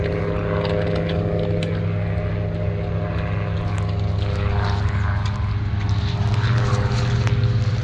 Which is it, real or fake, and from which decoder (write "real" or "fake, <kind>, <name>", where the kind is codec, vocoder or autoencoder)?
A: real